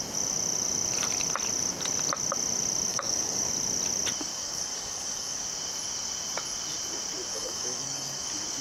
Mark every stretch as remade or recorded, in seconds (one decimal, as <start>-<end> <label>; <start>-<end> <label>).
0.0-2.9 recorded; 2.9-3.5 remade; 3.5-4.3 recorded; 4.3-5.5 remade; 5.5-7.3 recorded; 7.3-8.2 remade; 8.2-8.6 recorded